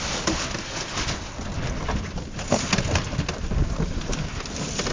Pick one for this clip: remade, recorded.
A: recorded